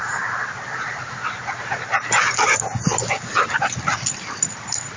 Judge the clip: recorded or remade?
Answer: recorded